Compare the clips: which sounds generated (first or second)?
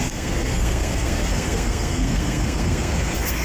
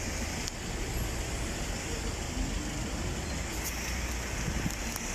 first